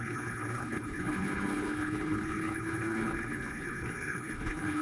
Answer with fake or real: fake